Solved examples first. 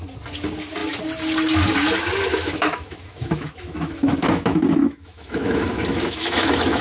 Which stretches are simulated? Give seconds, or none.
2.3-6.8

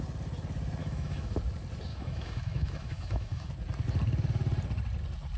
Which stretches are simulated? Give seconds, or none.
0.8-1.4; 1.9-3.5

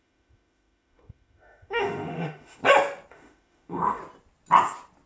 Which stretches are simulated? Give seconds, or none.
0.0-2.6; 3.1-4.0

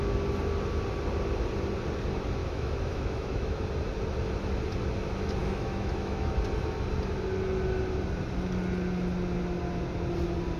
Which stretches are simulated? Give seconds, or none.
2.4-3.6; 5.4-6.3

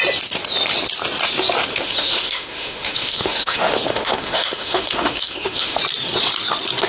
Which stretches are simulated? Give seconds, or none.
1.7-5.8

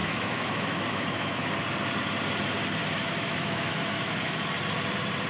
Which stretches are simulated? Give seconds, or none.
0.0-1.5; 2.8-4.4

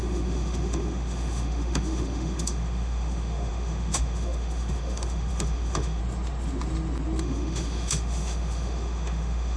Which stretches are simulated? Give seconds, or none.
0.0-6.0; 7.2-9.6